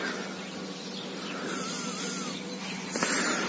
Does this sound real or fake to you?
real